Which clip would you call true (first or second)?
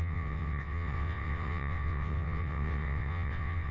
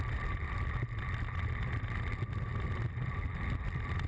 second